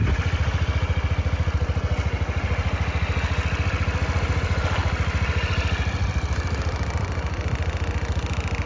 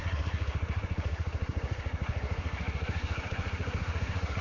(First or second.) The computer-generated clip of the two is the second